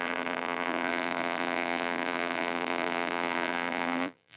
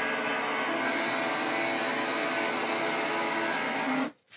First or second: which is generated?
first